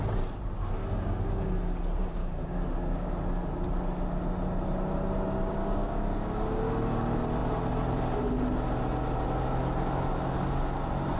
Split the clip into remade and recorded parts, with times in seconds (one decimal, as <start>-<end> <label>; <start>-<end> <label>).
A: 0.0-0.8 recorded; 0.8-1.5 remade; 1.5-2.2 recorded; 2.2-3.1 remade; 3.1-5.6 recorded; 5.6-6.7 remade; 6.7-11.2 recorded